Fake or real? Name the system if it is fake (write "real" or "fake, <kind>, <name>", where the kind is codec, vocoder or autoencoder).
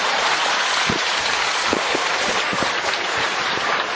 fake, vocoder, BigVGAN v2